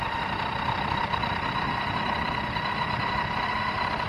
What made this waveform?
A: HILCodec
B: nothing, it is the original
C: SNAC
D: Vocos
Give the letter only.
B